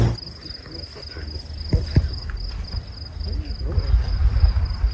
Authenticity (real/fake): real